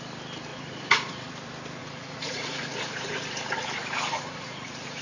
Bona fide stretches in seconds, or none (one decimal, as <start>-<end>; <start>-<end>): 0.0-0.5; 1.3-1.8